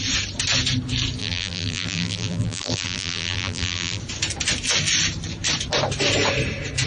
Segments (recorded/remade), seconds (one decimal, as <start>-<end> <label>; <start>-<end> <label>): 0.0-1.2 recorded; 1.2-4.0 remade; 4.0-6.9 recorded